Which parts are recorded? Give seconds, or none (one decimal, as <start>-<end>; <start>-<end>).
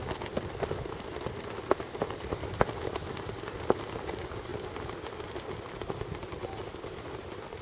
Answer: 0.0-7.6